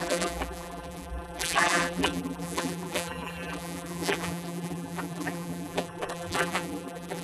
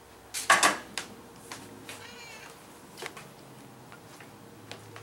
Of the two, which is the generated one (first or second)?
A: first